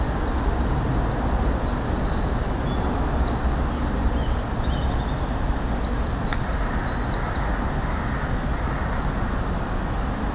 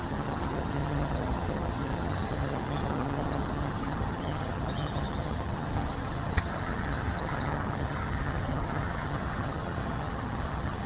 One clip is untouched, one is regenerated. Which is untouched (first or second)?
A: first